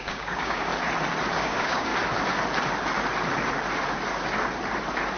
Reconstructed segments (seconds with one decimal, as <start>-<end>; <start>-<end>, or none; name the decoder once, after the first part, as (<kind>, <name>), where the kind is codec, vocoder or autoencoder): 0.0-0.7 (codec, DAC); 1.3-1.9